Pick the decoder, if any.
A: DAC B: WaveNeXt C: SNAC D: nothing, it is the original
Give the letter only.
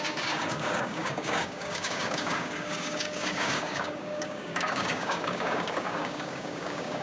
A